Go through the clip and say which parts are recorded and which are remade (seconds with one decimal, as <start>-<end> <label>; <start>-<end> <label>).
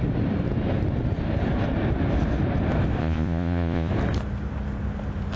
0.0-3.0 recorded; 3.0-3.9 remade; 3.9-5.4 recorded